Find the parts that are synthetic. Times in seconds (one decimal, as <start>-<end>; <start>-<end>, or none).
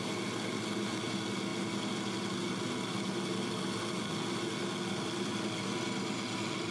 none